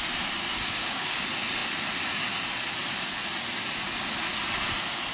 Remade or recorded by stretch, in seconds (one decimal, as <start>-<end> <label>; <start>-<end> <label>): 0.0-0.5 recorded; 0.5-1.2 remade; 1.2-5.1 recorded